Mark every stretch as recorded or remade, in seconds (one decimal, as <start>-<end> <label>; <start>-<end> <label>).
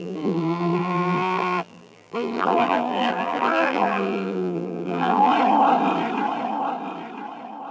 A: 0.0-5.3 remade; 5.3-7.7 recorded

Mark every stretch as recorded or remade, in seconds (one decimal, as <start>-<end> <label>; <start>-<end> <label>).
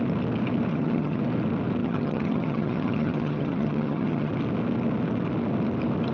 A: 0.0-0.7 recorded; 0.7-1.2 remade; 1.2-1.8 recorded; 1.8-4.3 remade; 4.3-6.1 recorded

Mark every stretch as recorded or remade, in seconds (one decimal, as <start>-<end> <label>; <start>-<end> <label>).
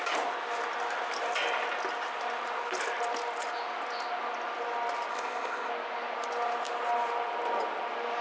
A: 0.0-5.1 recorded; 5.1-5.7 remade; 5.7-8.2 recorded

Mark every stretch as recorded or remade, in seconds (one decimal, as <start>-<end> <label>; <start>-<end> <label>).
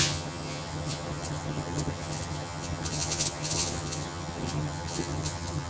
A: 0.0-5.7 remade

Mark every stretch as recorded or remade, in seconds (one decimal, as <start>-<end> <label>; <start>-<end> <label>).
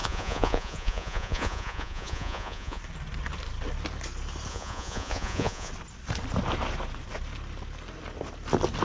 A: 0.0-2.8 remade; 2.8-4.5 recorded; 4.5-5.7 remade; 5.7-8.8 recorded